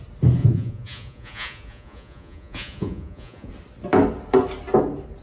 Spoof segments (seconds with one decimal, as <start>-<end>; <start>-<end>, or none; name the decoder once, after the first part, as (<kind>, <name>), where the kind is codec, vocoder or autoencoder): 0.4-3.5 (vocoder, Vocos)